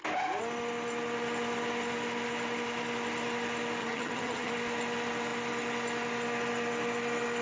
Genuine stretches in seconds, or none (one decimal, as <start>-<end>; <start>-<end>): 0.0-3.8; 4.5-7.4